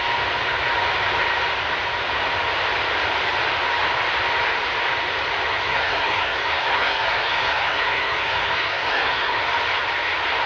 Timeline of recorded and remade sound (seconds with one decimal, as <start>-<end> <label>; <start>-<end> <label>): 0.0-5.5 recorded; 5.5-9.4 remade; 9.4-10.5 recorded